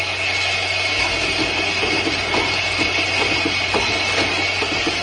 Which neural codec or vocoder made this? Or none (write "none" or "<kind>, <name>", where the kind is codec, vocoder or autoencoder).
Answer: none